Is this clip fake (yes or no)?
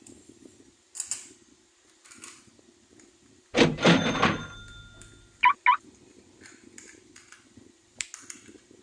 no